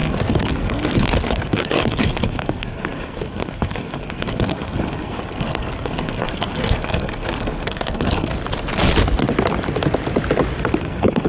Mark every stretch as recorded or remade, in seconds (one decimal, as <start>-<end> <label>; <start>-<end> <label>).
0.0-8.3 remade; 8.3-10.8 recorded; 10.8-11.3 remade

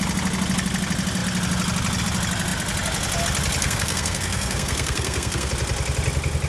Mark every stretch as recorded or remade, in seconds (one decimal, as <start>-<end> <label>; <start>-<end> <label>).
0.0-3.6 recorded; 3.6-5.5 remade; 5.5-6.5 recorded